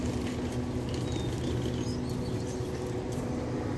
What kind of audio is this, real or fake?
real